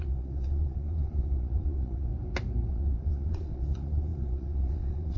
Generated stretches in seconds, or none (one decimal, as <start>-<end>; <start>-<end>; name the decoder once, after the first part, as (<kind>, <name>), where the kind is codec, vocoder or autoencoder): 0.0-2.1 (vocoder, Vocos); 2.7-5.2